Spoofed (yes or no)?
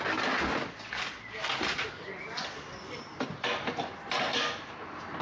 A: no